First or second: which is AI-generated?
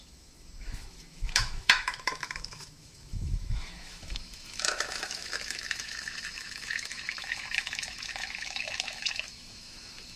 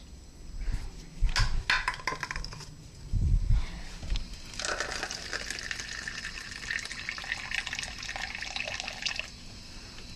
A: first